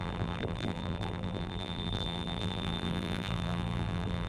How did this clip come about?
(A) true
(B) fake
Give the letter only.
B